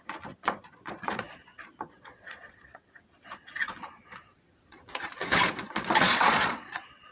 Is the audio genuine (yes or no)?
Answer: no